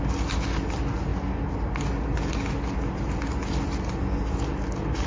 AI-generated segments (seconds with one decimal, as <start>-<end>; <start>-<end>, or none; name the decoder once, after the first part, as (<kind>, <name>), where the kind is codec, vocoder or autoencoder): none